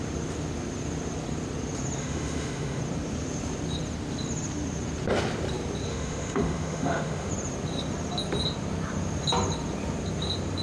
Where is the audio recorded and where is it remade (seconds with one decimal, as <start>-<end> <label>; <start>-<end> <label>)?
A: 0.0-2.0 recorded; 2.0-2.8 remade; 2.8-5.9 recorded; 5.9-7.3 remade; 7.3-10.6 recorded